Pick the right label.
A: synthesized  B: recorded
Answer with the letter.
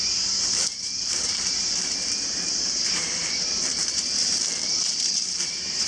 A